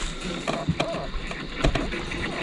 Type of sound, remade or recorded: recorded